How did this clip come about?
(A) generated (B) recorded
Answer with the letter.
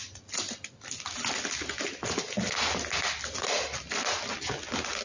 B